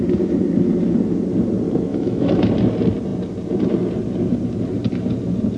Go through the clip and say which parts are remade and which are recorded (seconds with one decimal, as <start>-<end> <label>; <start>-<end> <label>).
0.0-1.9 recorded; 1.9-2.5 remade; 2.5-5.6 recorded